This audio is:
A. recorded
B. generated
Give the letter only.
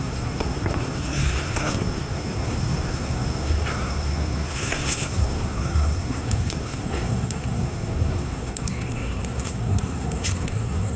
B